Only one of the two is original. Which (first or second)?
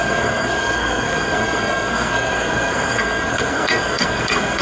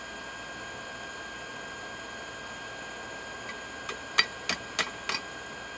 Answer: second